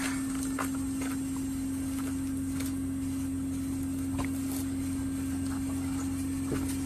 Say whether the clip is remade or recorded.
recorded